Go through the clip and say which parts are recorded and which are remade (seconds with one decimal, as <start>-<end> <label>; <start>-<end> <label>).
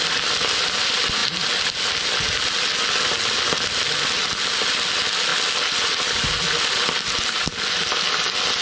0.0-8.6 recorded